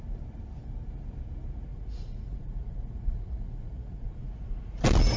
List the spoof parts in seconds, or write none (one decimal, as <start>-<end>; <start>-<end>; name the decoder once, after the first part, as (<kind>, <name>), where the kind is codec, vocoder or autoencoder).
1.7-4.8 (vocoder, Vocos)